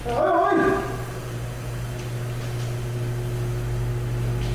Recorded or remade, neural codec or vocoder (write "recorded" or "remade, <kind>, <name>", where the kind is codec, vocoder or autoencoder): recorded